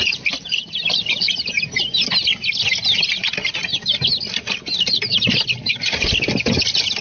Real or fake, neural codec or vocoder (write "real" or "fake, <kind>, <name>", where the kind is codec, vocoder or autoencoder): real